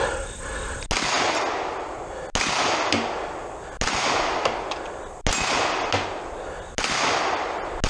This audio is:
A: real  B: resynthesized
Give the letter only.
A